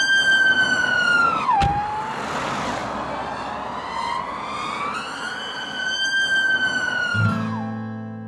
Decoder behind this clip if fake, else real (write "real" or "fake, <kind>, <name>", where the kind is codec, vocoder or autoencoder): real